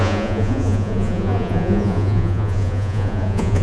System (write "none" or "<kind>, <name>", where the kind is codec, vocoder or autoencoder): vocoder, Vocos